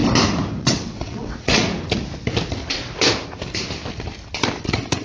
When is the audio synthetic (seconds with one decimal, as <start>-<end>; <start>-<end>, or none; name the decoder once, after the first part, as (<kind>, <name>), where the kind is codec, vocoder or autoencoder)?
0.6-1.6 (vocoder, WaveNeXt); 4.6-5.0